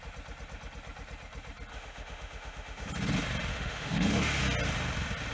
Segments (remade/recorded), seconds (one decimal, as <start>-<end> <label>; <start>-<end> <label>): 0.0-1.7 recorded; 1.7-2.9 remade; 2.9-3.5 recorded; 3.5-4.4 remade; 4.4-5.3 recorded